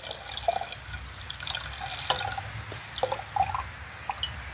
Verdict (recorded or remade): recorded